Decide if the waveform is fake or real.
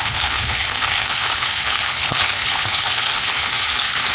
fake